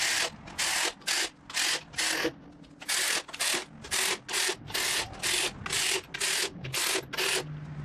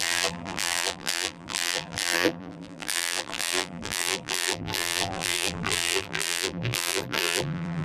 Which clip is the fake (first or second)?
second